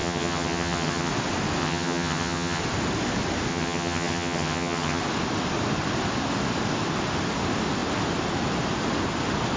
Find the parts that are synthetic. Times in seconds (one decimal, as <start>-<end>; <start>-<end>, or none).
0.0-1.1; 1.6-2.6; 3.5-5.0